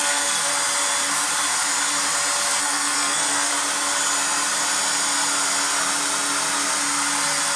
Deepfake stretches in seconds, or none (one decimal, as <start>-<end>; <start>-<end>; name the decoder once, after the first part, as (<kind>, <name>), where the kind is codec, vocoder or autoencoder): 0.0-0.5 (codec, SNAC); 2.6-3.5